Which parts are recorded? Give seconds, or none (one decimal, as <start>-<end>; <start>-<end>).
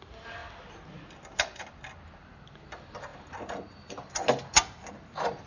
0.0-5.5